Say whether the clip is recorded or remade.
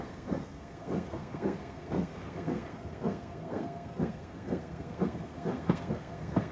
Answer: remade